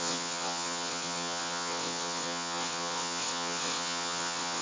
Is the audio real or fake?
fake